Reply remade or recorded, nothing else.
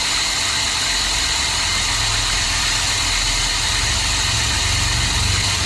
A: remade